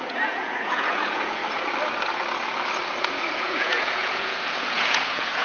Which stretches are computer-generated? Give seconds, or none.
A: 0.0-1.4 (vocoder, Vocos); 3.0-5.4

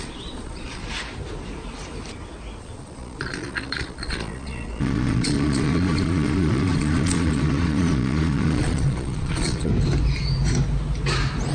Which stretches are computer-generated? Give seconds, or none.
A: 0.0-0.8 (vocoder, Vocos); 2.6-9.7

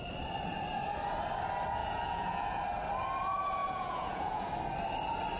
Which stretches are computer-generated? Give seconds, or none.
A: 1.8-2.6 (vocoder, Vocos); 3.6-4.5

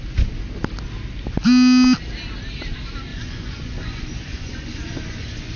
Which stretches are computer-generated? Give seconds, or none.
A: 3.1-5.6 (vocoder, Vocos)

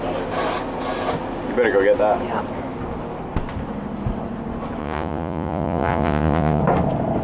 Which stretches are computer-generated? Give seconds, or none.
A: 4.8-6.6 (vocoder, Vocos)